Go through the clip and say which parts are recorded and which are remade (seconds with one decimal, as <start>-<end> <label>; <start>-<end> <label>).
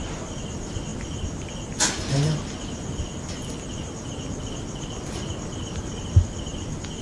0.0-7.0 recorded